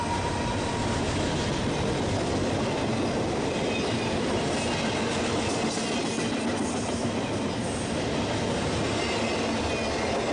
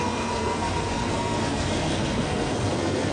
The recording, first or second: first